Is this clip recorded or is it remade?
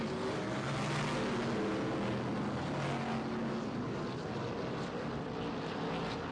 recorded